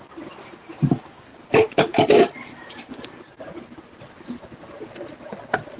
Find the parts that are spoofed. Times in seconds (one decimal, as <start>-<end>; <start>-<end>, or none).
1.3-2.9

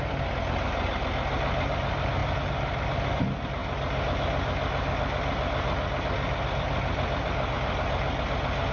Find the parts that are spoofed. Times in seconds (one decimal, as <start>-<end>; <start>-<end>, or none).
none

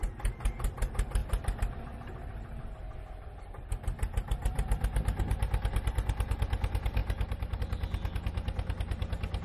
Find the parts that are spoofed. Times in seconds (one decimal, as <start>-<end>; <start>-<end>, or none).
1.2-3.7; 4.4-5.2

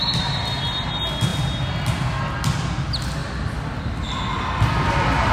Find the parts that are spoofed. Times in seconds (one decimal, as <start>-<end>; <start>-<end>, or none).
3.2-4.1

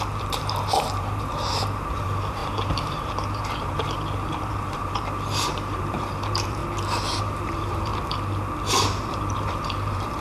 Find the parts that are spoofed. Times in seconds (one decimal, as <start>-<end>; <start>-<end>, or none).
0.0-6.6; 7.2-7.9; 9.1-10.2

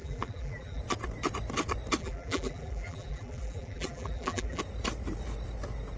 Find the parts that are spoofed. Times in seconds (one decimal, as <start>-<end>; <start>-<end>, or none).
0.0-0.8; 2.0-4.6

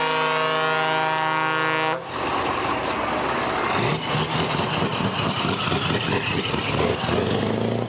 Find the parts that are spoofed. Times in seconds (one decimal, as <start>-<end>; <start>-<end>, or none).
2.3-3.0; 4.9-6.6